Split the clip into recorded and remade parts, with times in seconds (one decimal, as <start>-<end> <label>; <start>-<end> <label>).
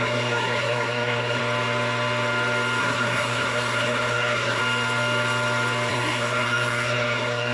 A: 0.0-1.4 remade; 1.4-2.8 recorded; 2.8-4.6 remade; 4.6-5.9 recorded; 5.9-7.5 remade